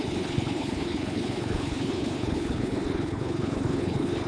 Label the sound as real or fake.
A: fake